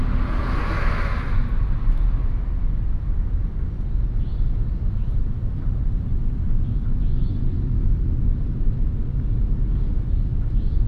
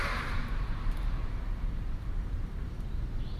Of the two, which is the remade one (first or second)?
second